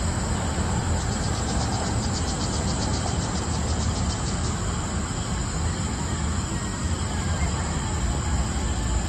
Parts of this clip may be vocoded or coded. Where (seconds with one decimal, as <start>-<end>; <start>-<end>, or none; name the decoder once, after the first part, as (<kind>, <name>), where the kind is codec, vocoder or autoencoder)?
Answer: 0.8-5.2 (vocoder, BigVGAN v2); 6.7-7.8

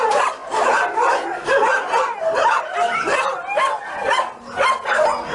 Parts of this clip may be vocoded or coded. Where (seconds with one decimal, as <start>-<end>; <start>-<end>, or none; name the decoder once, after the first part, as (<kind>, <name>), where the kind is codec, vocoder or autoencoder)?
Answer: 0.0-0.4 (vocoder, BigVGAN v2); 2.6-3.3

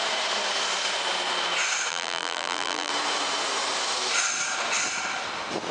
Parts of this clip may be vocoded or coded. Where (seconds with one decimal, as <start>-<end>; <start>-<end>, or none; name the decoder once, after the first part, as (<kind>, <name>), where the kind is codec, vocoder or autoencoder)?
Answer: 1.9-2.9 (vocoder, BigVGAN v2)

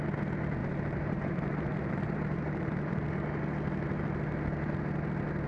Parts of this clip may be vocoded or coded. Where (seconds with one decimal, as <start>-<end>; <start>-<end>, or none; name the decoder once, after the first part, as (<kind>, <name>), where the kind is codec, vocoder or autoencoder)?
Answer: 0.6-3.1 (vocoder, BigVGAN v2)

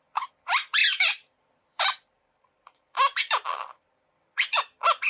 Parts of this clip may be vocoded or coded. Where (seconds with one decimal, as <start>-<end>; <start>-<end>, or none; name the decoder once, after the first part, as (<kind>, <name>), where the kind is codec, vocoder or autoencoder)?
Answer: 0.8-3.9 (vocoder, BigVGAN v2)

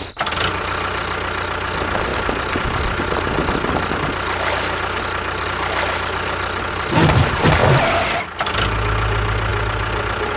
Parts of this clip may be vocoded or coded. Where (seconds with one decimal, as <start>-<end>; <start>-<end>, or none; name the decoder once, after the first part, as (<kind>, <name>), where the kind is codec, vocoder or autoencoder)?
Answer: none